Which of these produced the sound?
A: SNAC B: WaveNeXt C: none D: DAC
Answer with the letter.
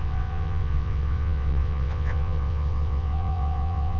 B